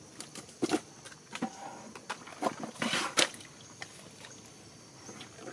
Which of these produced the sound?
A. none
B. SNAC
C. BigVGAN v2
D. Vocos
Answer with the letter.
A